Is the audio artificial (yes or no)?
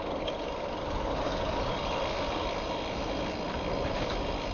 no